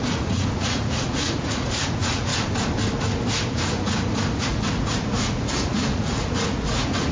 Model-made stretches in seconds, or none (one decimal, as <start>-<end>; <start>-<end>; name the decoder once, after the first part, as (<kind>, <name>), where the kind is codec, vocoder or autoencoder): 0.0-2.3 (vocoder, Vocos); 3.4-7.1